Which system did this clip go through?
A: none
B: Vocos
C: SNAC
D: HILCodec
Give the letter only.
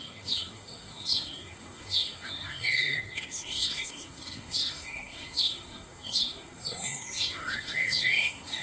C